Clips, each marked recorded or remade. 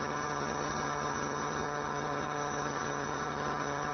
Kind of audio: remade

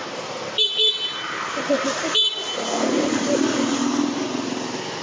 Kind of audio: recorded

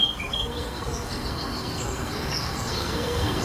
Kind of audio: remade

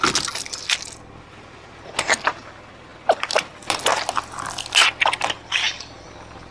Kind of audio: recorded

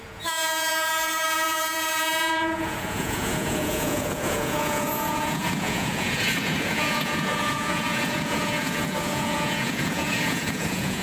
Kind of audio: remade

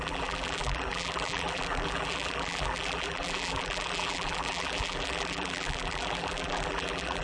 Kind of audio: remade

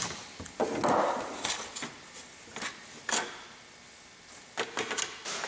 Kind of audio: recorded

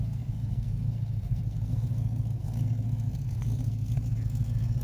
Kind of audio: remade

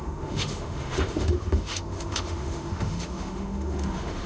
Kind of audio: remade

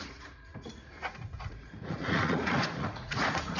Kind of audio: remade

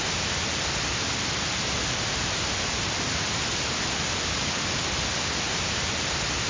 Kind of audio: recorded